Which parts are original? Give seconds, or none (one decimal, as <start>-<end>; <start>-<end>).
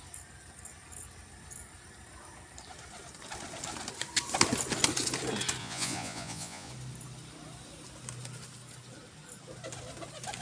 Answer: 0.0-5.6; 6.7-10.4